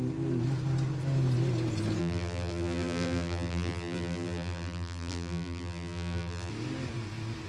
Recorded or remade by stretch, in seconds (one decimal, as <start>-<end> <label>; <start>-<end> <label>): 0.0-2.0 recorded; 2.0-6.5 remade; 6.5-7.5 recorded